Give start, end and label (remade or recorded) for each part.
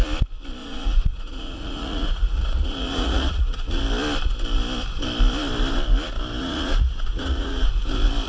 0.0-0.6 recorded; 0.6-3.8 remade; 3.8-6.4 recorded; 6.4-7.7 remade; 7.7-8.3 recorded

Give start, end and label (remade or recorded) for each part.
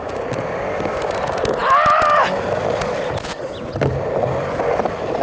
0.0-5.2 recorded